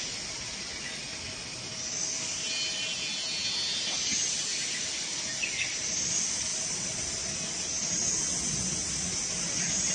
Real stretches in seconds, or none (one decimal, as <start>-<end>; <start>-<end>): 0.0-9.9